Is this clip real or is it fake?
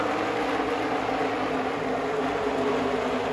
real